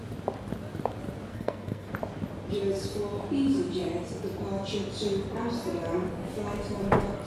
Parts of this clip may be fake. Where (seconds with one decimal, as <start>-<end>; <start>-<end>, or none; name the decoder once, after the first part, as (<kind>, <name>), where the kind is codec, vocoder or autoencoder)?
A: 1.3-1.9 (codec, SNAC)